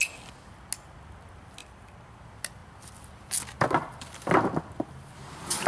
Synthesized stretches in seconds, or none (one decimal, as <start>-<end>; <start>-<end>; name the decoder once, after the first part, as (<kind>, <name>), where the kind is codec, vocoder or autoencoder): 1.6-2.2 (vocoder, BigVGAN v2)